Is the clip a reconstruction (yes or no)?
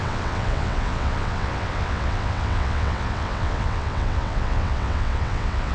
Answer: yes